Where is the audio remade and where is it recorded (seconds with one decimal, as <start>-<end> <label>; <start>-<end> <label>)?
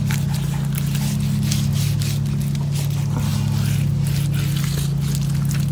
0.0-5.7 recorded